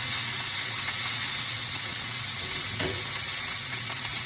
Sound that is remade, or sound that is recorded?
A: remade